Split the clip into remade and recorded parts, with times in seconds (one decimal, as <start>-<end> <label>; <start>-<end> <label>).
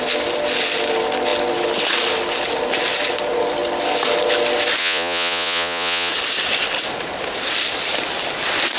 0.0-4.8 recorded; 4.8-6.1 remade; 6.1-8.8 recorded